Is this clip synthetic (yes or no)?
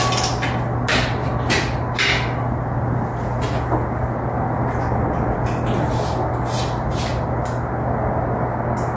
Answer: no